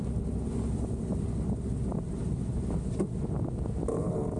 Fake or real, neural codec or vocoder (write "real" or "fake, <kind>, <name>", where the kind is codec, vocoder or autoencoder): real